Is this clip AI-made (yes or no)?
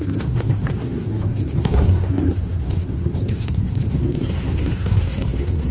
yes